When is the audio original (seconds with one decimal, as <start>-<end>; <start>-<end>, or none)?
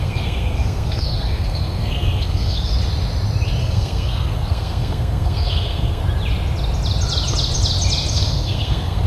2.7-3.6; 6.0-8.1